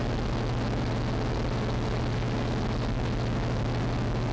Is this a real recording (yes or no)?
yes